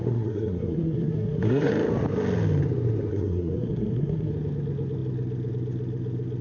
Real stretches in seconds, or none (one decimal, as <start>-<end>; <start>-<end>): 1.7-3.1; 4.3-6.4